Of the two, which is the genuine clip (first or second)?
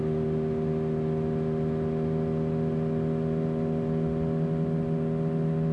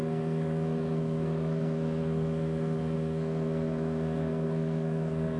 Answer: first